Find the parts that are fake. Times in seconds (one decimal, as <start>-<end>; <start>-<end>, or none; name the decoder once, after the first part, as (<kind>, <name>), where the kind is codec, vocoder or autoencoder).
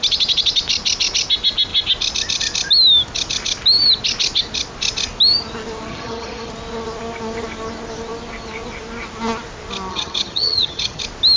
5.9-6.5 (vocoder, HiFi-GAN); 9.9-11.0